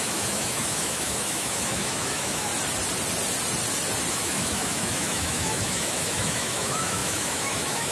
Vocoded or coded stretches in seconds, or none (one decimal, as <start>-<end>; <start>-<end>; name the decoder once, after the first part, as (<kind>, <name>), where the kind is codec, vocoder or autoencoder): 0.0-2.5 (autoencoder, DAC-VAE); 4.1-7.9